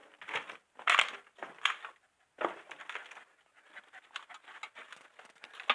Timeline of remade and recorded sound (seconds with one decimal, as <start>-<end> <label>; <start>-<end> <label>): 0.0-5.7 recorded